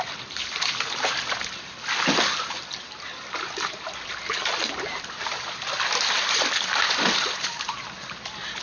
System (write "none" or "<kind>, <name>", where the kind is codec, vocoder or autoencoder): none